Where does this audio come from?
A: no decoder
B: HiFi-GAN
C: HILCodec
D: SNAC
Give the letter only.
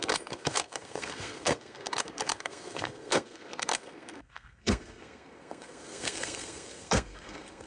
D